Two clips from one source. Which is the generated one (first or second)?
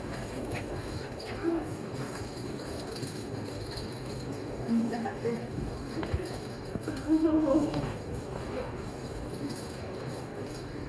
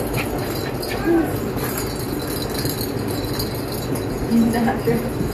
first